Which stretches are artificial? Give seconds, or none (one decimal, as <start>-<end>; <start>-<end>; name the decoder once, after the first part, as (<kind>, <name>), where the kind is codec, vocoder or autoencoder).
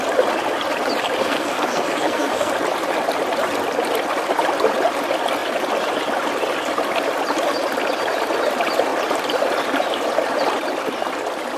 1.2-2.5 (codec, SNAC)